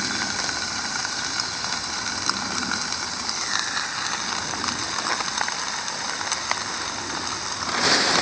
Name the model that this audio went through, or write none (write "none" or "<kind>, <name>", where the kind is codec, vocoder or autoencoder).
none